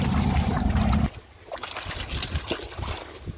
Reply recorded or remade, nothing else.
recorded